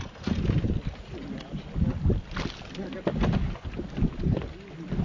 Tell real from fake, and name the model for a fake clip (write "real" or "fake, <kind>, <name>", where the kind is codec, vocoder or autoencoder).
real